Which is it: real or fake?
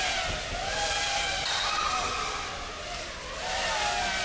real